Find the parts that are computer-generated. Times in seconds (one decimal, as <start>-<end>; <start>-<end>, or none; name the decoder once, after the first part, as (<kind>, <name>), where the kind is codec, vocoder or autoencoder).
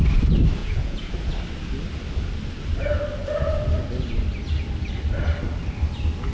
0.6-1.1 (vocoder, Vocos)